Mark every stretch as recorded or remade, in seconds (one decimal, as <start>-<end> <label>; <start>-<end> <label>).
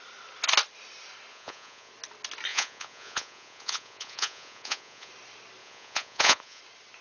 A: 0.0-1.3 recorded; 1.3-1.9 remade; 1.9-2.5 recorded; 2.5-5.1 remade; 5.1-5.6 recorded; 5.6-6.6 remade; 6.6-7.0 recorded